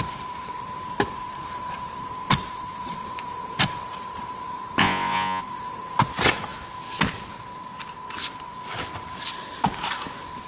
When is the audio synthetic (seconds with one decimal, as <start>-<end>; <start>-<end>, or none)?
4.8-5.4

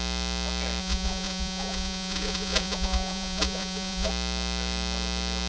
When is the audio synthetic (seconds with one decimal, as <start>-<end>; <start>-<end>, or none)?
0.8-4.1